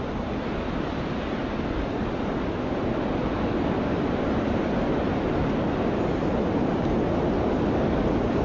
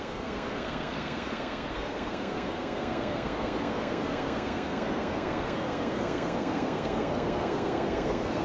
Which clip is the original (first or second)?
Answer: first